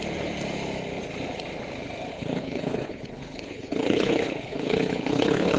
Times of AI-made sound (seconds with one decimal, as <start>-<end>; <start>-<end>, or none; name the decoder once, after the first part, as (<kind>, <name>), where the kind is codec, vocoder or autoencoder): 2.1-5.6 (codec, HILCodec)